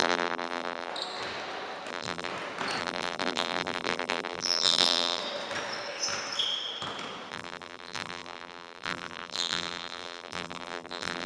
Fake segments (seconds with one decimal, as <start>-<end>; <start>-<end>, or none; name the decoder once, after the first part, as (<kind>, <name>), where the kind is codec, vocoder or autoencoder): 0.0-0.9 (vocoder, BigVGAN v2); 1.9-2.3; 2.8-5.2; 7.3-11.3